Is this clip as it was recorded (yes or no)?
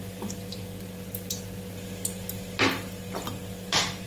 yes